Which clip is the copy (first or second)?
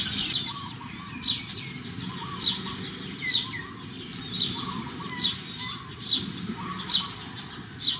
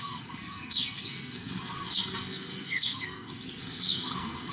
second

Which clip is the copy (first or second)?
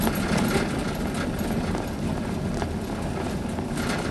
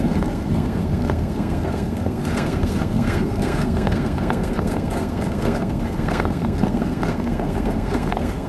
second